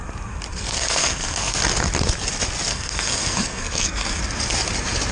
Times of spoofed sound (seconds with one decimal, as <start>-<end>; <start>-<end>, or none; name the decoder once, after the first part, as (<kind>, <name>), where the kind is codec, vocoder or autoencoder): 0.5-1.6 (codec, SNAC); 2.7-4.2